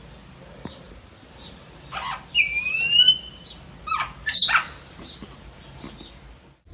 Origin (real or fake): real